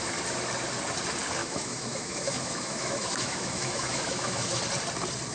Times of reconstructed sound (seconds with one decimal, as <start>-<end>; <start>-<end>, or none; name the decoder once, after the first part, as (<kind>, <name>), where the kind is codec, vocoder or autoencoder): 1.4-4.6 (autoencoder, DAC-VAE)